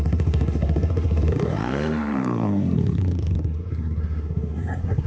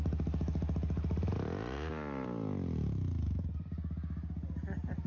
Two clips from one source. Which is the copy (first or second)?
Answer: first